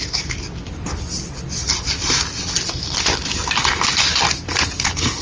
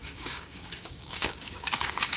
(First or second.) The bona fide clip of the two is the first